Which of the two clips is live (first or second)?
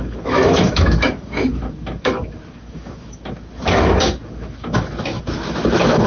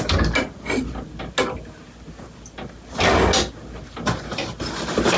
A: second